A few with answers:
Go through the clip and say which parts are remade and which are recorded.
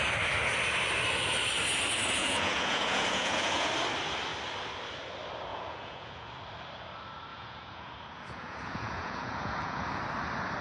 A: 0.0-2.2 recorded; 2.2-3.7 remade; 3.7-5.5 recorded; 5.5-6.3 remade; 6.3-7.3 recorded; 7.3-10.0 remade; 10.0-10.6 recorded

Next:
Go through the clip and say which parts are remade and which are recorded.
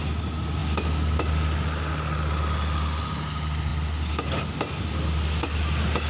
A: 0.0-6.1 recorded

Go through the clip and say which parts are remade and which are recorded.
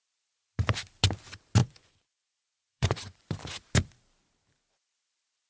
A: 0.0-1.6 recorded; 1.6-3.3 remade; 3.3-5.5 recorded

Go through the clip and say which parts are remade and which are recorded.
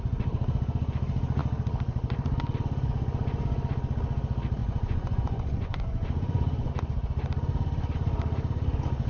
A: 0.0-4.6 recorded; 4.6-6.7 remade; 6.7-9.1 recorded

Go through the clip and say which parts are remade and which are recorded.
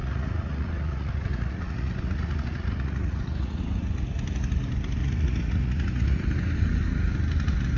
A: 0.0-3.6 remade; 3.6-5.0 recorded; 5.0-6.2 remade; 6.2-7.8 recorded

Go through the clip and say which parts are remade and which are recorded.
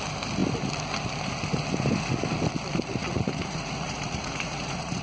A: 0.0-3.0 recorded; 3.0-5.0 remade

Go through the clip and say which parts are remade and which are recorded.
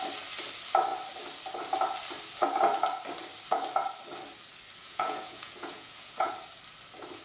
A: 0.0-4.8 recorded; 4.8-6.3 remade; 6.3-7.2 recorded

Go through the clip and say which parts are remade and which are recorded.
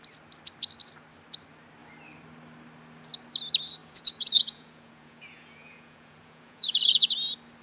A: 0.0-3.8 recorded; 3.8-7.1 remade; 7.1-7.6 recorded